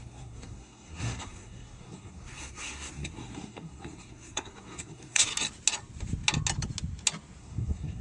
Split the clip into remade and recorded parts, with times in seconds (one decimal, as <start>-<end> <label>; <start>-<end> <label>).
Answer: 0.0-5.3 remade; 5.3-7.4 recorded; 7.4-8.0 remade